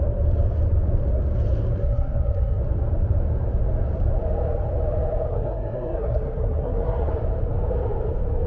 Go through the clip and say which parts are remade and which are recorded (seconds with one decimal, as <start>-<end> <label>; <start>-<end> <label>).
0.0-1.8 recorded; 1.8-2.6 remade; 2.6-5.3 recorded; 5.3-7.1 remade; 7.1-8.5 recorded

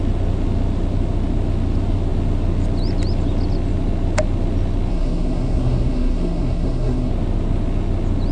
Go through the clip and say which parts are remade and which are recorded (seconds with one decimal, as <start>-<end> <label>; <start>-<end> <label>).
0.0-4.9 recorded; 4.9-7.1 remade; 7.1-8.3 recorded

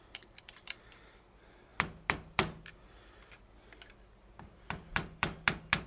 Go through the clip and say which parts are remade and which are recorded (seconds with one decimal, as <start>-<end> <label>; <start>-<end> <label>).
0.0-5.9 recorded

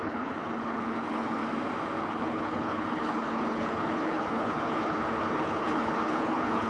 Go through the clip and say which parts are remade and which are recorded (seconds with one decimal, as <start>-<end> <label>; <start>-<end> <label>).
0.0-1.4 remade; 1.4-2.0 recorded; 2.0-6.7 remade

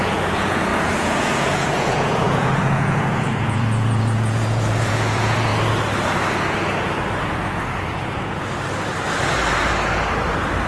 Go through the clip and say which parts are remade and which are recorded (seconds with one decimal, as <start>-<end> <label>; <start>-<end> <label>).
0.0-5.5 remade; 5.5-7.3 recorded; 7.3-8.4 remade; 8.4-10.7 recorded

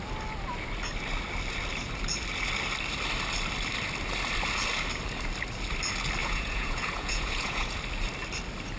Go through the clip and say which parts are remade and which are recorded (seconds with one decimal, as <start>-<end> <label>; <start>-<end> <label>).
0.0-6.2 recorded; 6.2-7.8 remade; 7.8-8.8 recorded